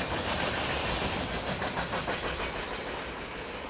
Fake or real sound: real